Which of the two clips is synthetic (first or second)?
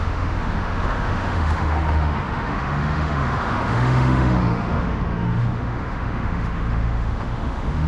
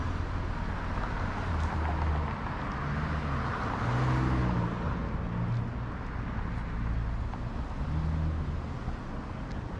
first